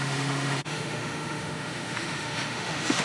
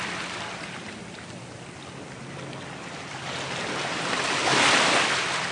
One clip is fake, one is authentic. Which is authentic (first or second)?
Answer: second